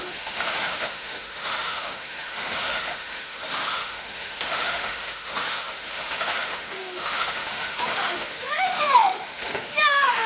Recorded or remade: remade